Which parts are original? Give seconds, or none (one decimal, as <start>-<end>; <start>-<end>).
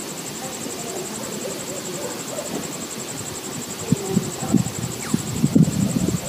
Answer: 0.0-6.3